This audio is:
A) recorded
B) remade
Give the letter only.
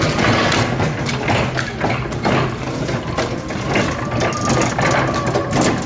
A